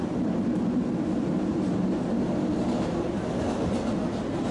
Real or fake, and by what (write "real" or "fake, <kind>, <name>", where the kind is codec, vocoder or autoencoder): real